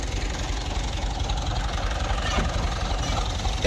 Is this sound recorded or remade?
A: recorded